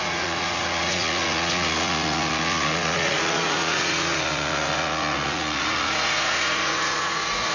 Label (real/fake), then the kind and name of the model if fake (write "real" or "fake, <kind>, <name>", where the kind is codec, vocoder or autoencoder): fake, vocoder, Vocos